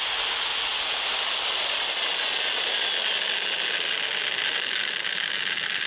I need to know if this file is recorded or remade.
recorded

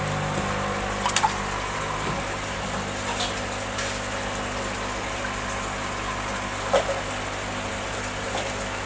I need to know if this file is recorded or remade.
recorded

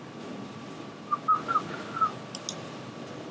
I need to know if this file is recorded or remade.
recorded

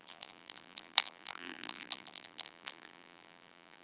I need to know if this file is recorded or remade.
remade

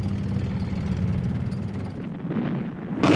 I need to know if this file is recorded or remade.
recorded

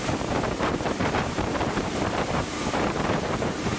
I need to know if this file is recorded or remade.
remade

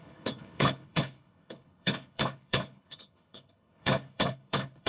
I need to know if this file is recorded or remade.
remade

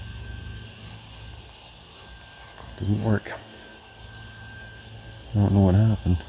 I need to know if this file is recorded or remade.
recorded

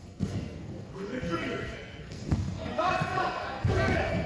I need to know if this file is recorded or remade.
remade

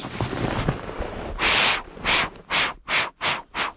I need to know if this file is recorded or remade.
recorded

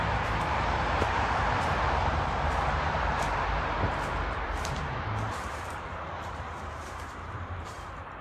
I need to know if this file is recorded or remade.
remade